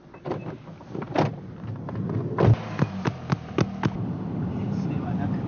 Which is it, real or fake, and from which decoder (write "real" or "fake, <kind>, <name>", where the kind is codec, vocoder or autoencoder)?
real